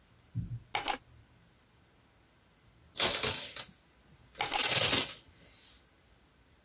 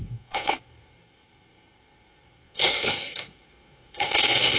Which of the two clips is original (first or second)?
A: first